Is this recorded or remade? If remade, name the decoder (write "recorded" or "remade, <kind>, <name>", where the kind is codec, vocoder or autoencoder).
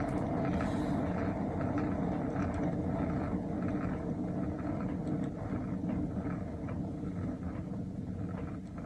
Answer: recorded